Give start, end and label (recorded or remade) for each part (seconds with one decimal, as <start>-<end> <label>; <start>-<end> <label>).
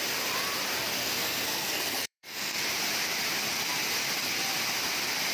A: 0.0-1.0 recorded; 1.0-2.7 remade; 2.7-5.3 recorded